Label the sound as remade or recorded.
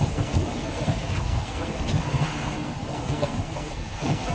remade